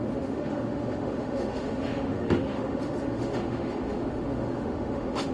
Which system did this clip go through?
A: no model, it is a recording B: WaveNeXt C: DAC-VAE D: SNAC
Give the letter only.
C